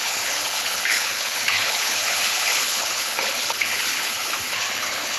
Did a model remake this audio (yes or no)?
yes